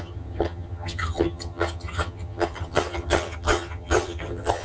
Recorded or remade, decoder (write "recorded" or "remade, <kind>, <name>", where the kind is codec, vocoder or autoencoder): remade, vocoder, HiFi-GAN